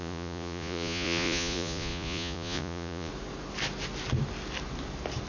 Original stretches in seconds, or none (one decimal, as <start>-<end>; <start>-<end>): 3.1-5.3